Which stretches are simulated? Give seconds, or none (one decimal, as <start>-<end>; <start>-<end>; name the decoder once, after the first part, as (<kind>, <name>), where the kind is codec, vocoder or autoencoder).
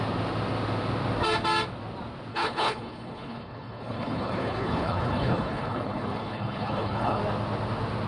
2.3-7.2 (codec, HILCodec)